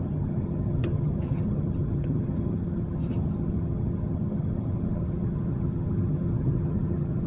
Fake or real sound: fake